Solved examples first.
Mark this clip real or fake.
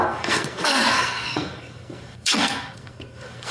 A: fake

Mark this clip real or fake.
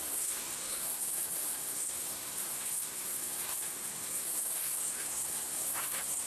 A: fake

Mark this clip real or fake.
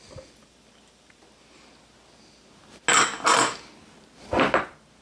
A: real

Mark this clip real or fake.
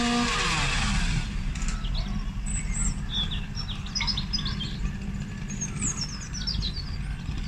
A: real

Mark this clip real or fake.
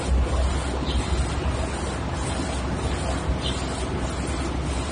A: real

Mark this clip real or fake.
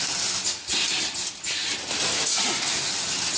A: real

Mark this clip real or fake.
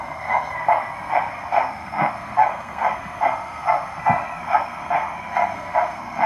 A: fake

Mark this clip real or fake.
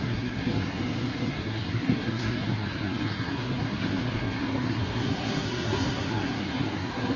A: fake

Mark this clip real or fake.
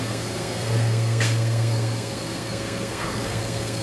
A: fake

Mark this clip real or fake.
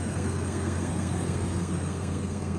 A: fake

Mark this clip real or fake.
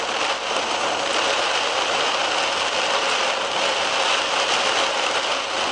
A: real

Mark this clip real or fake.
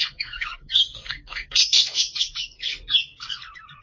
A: fake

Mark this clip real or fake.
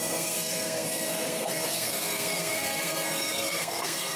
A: fake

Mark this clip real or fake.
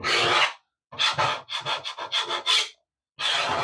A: real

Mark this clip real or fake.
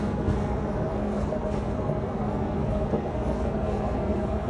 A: fake